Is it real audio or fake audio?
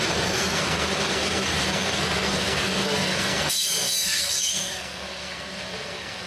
fake